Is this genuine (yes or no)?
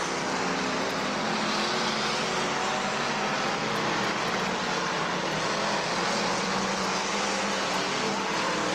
yes